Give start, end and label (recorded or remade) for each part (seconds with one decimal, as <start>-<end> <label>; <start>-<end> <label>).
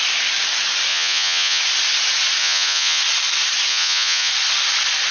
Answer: 0.0-0.9 recorded; 0.9-1.6 remade; 1.6-2.4 recorded; 2.4-3.0 remade; 3.0-3.7 recorded; 3.7-4.3 remade; 4.3-5.1 recorded